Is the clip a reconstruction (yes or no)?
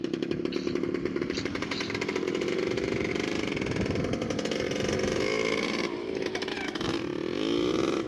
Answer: yes